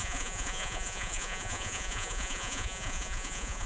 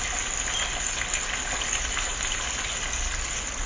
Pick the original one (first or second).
second